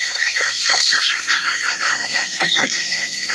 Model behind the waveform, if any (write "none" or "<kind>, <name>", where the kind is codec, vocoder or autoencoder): codec, SNAC